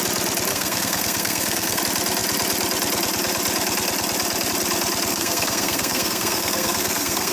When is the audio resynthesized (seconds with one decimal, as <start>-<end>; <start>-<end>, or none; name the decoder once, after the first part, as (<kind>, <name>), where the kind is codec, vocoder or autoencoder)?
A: 0.5-1.8 (codec, SNAC); 5.1-7.3